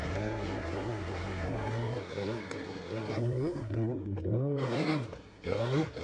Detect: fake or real fake